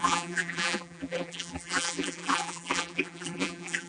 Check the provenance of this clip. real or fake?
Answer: fake